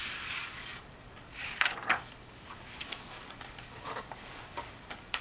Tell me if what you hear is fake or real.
fake